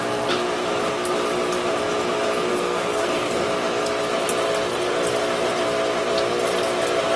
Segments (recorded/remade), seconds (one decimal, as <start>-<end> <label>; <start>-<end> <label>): 0.0-2.5 recorded; 2.5-3.5 remade; 3.5-7.2 recorded